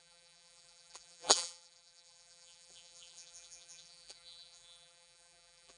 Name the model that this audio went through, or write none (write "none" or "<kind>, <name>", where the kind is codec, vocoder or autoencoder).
vocoder, BigVGAN v2